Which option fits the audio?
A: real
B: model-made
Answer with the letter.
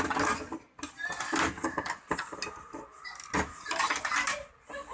A